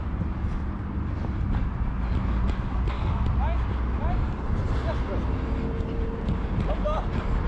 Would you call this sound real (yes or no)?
yes